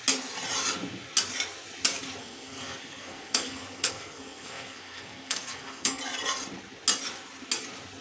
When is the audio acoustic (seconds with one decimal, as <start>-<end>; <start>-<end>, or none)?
0.0-2.2; 6.0-8.0